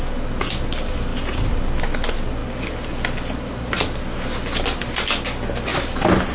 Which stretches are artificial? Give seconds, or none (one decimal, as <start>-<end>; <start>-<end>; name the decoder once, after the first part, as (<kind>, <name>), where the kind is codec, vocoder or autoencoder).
none